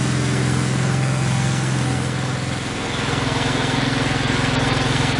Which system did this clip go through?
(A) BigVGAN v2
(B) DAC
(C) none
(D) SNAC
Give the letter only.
D